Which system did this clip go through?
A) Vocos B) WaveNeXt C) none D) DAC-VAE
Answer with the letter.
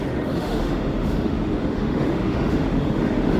D